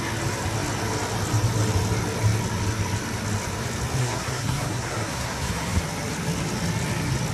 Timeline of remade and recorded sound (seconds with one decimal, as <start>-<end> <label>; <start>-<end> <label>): 0.0-4.0 recorded; 4.0-5.8 remade; 5.8-7.3 recorded